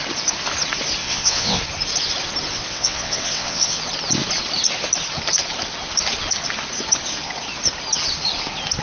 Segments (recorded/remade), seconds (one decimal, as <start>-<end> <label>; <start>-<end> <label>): 0.0-1.0 recorded; 1.0-1.6 remade; 1.6-2.5 recorded; 2.5-3.8 remade; 3.8-8.8 recorded

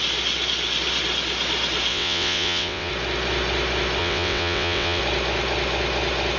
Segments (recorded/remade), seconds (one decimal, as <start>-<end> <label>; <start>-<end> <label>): 0.0-1.9 recorded; 1.9-2.9 remade; 2.9-4.0 recorded; 4.0-5.0 remade; 5.0-6.4 recorded